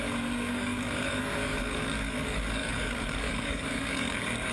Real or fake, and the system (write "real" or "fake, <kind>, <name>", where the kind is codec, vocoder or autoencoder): fake, codec, DAC